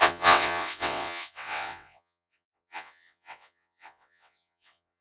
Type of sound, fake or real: fake